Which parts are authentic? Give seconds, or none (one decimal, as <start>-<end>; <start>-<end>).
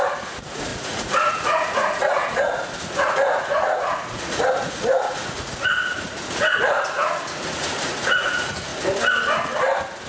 8.7-10.1